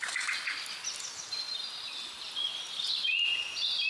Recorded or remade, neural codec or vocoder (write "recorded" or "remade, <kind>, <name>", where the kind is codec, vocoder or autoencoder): recorded